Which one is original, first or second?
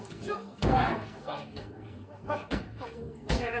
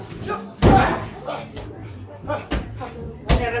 second